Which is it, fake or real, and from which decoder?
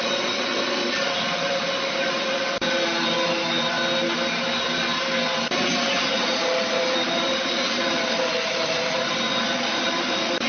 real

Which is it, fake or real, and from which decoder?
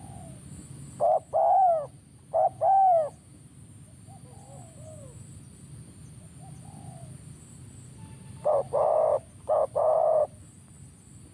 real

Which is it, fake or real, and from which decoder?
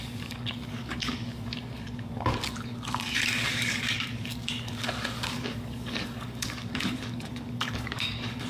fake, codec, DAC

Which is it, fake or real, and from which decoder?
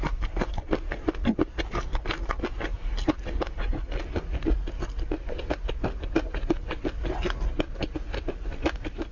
real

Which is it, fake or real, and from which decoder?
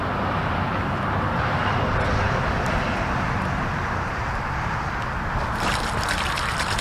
real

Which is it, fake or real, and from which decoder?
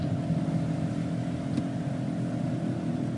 real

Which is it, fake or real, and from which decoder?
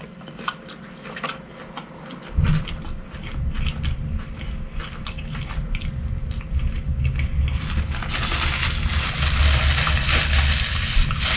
real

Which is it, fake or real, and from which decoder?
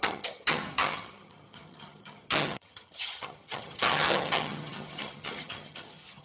fake, vocoder, HiFi-GAN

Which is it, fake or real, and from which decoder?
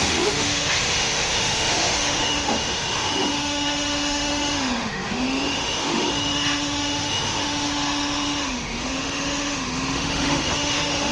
fake, autoencoder, DAC-VAE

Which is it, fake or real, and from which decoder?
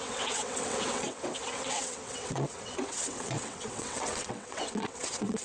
fake, vocoder, WaveNeXt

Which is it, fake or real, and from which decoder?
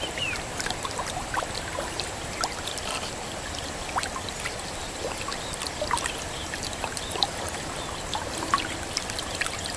fake, vocoder, BigVGAN v2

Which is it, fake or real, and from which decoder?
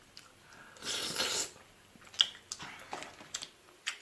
real